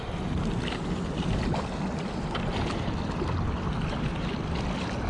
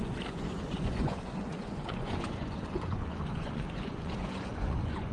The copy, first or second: second